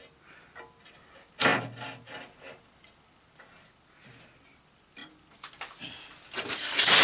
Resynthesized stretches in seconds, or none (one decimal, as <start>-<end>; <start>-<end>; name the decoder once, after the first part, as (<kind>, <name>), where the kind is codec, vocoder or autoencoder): none